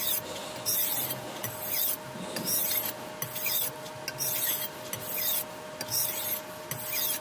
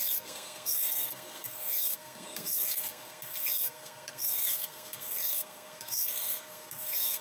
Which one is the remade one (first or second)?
second